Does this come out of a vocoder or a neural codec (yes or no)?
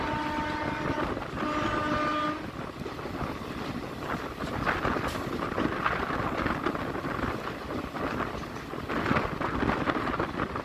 no